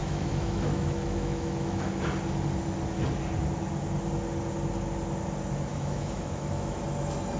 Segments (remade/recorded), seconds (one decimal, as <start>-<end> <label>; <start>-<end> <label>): 0.0-1.9 remade; 1.9-5.7 recorded; 5.7-6.8 remade; 6.8-7.4 recorded